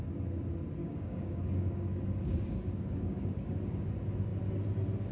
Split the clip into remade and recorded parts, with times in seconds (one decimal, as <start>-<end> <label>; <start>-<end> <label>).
0.0-0.8 recorded; 0.8-3.9 remade; 3.9-5.1 recorded